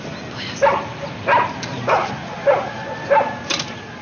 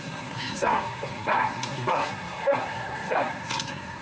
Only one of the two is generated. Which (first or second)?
second